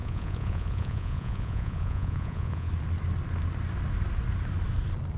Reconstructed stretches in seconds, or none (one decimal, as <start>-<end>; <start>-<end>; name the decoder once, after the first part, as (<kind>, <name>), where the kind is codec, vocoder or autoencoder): 0.0-2.7 (vocoder, Vocos)